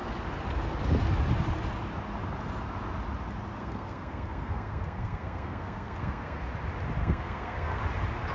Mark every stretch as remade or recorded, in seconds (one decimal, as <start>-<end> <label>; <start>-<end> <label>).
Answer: 0.0-3.6 recorded; 3.6-6.4 remade; 6.4-7.0 recorded; 7.0-7.8 remade; 7.8-8.3 recorded